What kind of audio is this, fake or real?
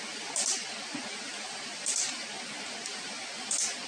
real